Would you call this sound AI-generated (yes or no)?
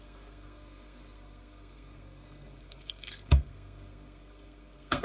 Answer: yes